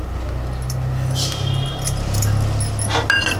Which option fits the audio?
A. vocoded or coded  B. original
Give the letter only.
B